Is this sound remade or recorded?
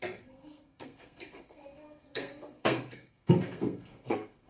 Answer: remade